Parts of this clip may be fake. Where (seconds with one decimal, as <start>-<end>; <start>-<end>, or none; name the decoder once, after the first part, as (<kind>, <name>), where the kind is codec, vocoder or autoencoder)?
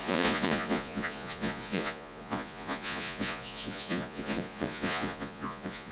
0.0-5.9 (vocoder, Vocos)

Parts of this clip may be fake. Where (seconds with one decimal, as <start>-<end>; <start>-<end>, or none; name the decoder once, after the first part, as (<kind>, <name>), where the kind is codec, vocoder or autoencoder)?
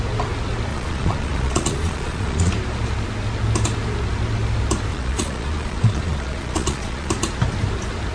0.7-2.5 (vocoder, Vocos); 4.9-7.1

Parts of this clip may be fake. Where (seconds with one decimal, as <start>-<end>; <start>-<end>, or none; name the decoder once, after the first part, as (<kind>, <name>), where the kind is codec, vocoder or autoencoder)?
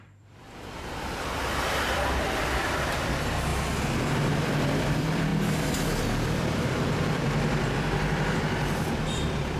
0.0-3.5 (vocoder, BigVGAN v2); 4.1-9.6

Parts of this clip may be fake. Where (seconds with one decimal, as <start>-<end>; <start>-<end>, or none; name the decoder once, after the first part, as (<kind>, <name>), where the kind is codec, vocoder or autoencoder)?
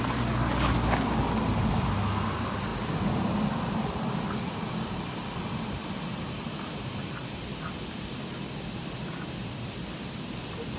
none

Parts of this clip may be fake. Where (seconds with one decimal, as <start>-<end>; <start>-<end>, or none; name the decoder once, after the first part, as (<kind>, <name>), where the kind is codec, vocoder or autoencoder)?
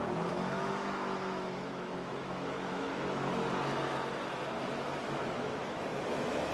0.0-3.4 (autoencoder, DAC-VAE); 5.4-6.5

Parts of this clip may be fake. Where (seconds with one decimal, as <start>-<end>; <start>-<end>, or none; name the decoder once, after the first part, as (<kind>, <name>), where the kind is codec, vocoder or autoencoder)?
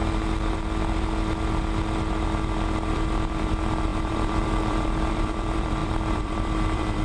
2.9-7.0 (vocoder, BigVGAN v2)